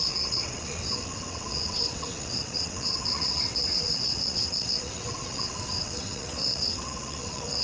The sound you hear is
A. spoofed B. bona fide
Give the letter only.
A